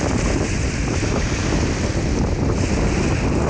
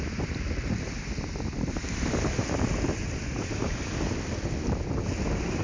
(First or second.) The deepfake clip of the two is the second